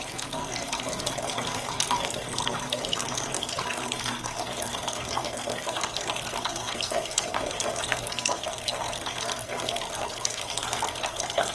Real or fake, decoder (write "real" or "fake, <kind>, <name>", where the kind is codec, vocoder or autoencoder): fake, codec, SNAC